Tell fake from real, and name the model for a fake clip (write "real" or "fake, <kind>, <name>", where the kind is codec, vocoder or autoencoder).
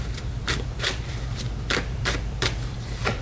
fake, vocoder, BigVGAN v2